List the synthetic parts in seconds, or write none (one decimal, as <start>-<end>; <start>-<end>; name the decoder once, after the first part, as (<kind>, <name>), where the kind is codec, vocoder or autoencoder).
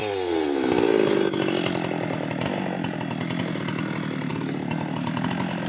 none